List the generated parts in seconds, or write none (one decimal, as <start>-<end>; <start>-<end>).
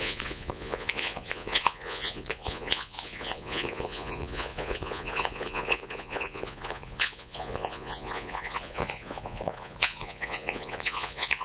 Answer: 0.0-11.4